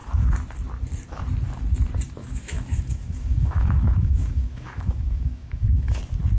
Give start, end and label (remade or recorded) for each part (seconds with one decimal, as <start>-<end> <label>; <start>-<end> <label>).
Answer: 0.0-2.2 recorded; 2.2-6.0 remade; 6.0-6.4 recorded